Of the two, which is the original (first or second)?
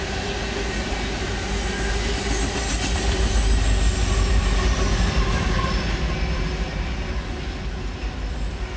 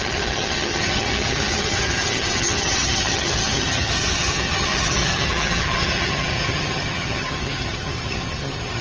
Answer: first